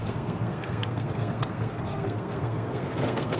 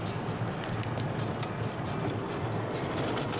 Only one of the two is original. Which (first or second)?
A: second